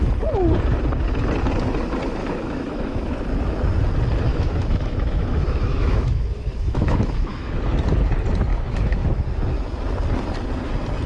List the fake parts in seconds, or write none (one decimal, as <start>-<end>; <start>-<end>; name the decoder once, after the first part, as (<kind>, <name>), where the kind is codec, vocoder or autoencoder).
2.2-3.2 (autoencoder, DAC-VAE); 4.3-7.6; 8.5-9.2

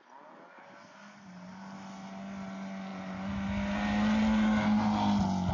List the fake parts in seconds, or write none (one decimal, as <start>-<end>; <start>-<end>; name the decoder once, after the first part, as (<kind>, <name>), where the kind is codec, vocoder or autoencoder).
none

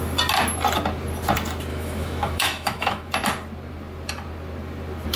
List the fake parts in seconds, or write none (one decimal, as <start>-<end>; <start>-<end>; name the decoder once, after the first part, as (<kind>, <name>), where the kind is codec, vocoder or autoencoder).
1.7-3.1 (autoencoder, DAC-VAE)

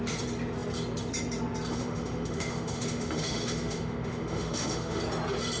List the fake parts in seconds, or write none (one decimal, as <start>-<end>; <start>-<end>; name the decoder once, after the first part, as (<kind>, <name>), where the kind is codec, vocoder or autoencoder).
1.7-5.0 (autoencoder, DAC-VAE)

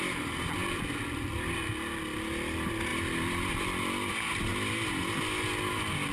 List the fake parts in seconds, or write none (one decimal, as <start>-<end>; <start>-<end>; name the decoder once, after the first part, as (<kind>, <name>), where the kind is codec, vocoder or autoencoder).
none

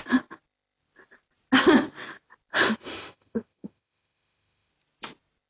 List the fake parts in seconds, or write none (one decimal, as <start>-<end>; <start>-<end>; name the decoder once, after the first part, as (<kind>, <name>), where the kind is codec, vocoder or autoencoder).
2.5-4.7 (autoencoder, DAC-VAE)

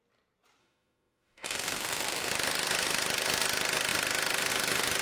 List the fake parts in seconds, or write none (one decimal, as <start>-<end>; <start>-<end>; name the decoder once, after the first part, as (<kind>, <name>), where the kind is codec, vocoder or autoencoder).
0.6-2.3 (autoencoder, DAC-VAE)